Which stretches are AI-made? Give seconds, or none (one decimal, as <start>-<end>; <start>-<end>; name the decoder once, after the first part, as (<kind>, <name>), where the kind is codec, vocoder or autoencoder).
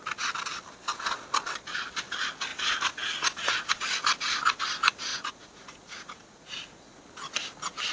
2.5-3.7 (vocoder, Vocos); 5.1-7.0